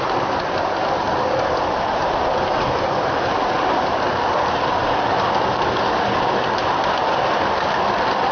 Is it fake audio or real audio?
real